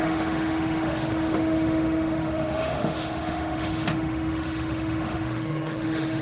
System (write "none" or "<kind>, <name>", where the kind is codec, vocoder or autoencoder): autoencoder, DAC-VAE